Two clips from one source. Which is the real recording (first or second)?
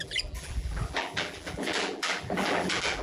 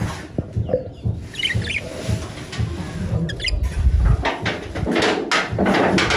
second